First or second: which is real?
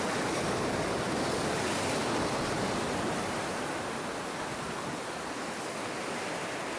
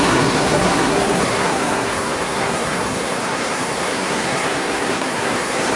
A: first